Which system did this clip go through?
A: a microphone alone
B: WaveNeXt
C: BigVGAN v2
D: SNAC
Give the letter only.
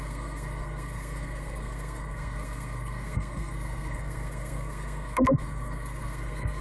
D